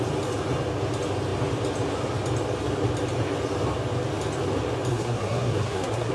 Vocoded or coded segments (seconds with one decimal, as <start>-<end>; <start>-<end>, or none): 4.9-6.1